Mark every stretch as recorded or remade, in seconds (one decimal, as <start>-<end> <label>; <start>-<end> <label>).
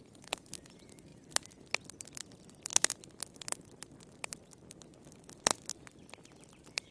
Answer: 0.0-6.9 recorded